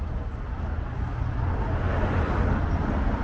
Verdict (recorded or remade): recorded